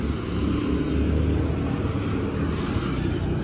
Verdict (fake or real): real